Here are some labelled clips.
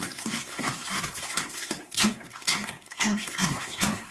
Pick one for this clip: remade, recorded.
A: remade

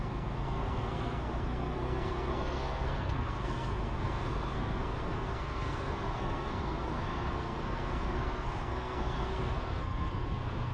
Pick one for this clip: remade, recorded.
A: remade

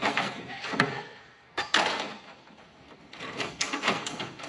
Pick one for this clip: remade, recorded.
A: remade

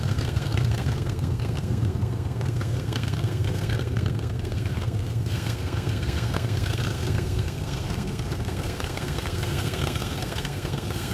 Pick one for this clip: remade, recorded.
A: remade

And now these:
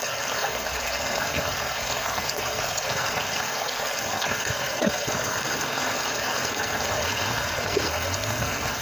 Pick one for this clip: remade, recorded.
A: remade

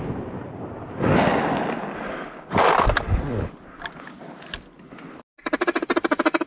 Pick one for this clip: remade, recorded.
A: recorded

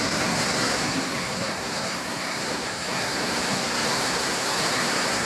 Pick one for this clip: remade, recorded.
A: remade